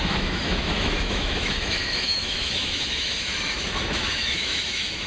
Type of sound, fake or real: fake